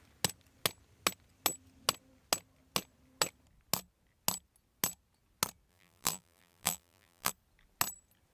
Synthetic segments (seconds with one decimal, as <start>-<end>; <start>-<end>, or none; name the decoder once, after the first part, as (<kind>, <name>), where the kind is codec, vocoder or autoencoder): 5.7-7.3 (vocoder, BigVGAN v2)